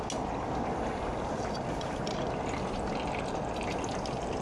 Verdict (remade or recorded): recorded